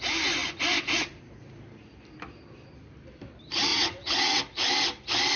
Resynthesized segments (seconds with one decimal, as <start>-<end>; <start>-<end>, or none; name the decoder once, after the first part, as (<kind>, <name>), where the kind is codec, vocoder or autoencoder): 3.7-4.4 (vocoder, WaveNeXt)